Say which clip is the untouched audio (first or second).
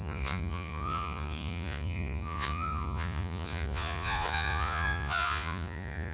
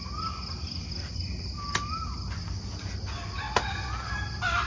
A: second